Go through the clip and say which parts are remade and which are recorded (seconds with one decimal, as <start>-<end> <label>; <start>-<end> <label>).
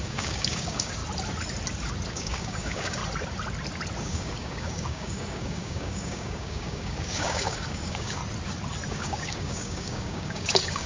0.0-1.0 remade; 1.0-2.1 recorded; 2.1-3.0 remade; 3.0-4.0 recorded; 4.0-8.2 remade; 8.2-8.9 recorded; 8.9-10.9 remade